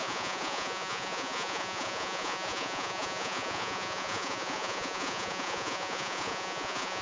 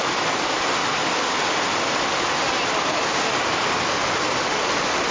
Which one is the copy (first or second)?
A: first